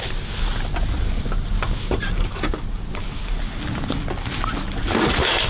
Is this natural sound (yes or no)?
yes